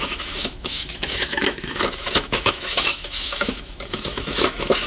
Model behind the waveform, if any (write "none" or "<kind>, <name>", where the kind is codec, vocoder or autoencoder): autoencoder, DAC-VAE